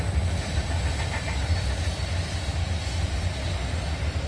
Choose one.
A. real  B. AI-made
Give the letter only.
A